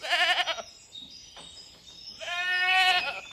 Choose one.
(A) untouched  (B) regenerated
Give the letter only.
A